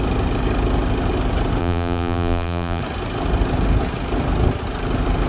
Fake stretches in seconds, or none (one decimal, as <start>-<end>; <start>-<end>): 1.6-2.8